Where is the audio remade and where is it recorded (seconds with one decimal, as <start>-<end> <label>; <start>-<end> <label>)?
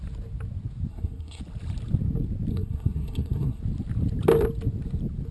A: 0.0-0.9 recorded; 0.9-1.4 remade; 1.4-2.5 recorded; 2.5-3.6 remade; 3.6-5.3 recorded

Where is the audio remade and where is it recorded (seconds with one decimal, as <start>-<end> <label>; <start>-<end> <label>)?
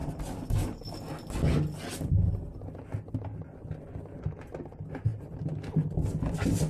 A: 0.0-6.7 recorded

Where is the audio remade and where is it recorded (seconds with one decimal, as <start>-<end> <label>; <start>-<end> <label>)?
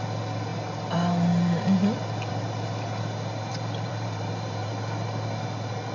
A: 0.0-3.5 recorded; 3.5-4.7 remade; 4.7-5.9 recorded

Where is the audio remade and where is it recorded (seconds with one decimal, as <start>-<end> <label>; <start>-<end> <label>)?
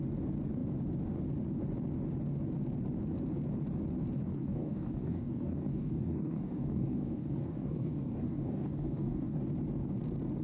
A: 0.0-4.3 recorded; 4.3-9.4 remade; 9.4-10.4 recorded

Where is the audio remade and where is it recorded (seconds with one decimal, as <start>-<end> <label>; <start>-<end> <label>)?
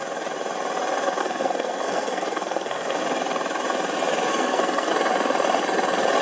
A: 0.0-1.2 recorded; 1.2-3.0 remade; 3.0-4.3 recorded; 4.3-4.9 remade; 4.9-6.2 recorded